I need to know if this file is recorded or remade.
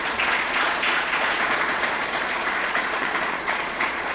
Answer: remade